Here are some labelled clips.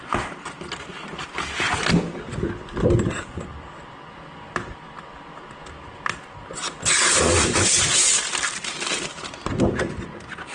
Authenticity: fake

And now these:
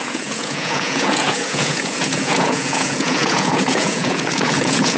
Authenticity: fake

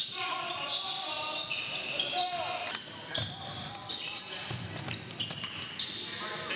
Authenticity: real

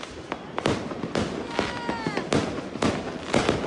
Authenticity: real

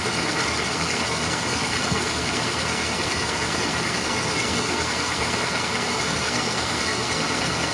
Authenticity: fake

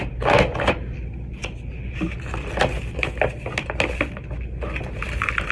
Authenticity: real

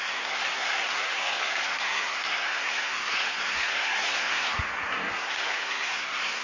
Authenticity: fake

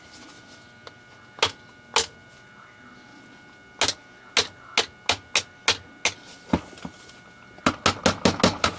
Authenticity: real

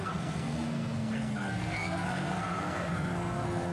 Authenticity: fake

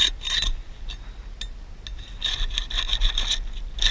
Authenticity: real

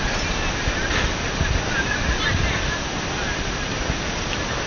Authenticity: real